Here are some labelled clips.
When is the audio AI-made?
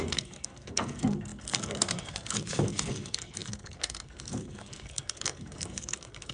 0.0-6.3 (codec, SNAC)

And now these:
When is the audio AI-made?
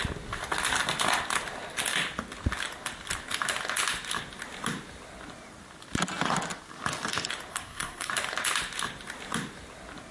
7.5-8.1 (codec, SNAC)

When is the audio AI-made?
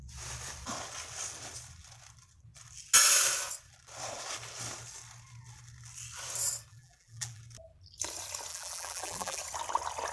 6.7-7.4 (vocoder, BigVGAN v2); 8.5-9.4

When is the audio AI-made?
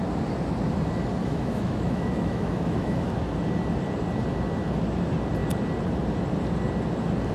1.2-3.1 (autoencoder, DAC-VAE)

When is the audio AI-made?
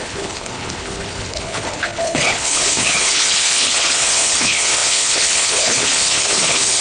0.0-6.8 (codec, HILCodec)